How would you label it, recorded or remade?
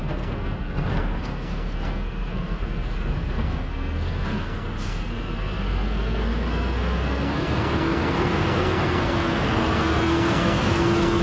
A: remade